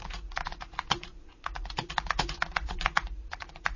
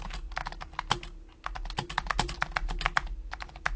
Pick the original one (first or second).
second